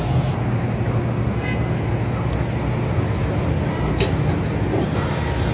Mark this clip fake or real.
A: real